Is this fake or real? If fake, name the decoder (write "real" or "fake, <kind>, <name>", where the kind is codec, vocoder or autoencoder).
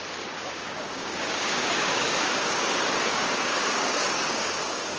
fake, codec, DAC